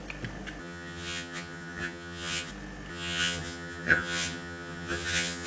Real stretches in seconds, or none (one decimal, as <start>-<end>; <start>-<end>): 0.0-0.6; 2.5-2.9